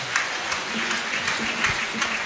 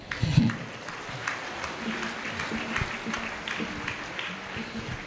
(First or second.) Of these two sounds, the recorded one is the second